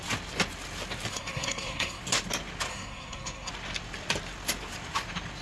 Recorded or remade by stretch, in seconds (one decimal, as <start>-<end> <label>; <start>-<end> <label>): 0.0-1.1 recorded; 1.1-2.0 remade; 2.0-2.7 recorded; 2.7-3.5 remade; 3.5-5.4 recorded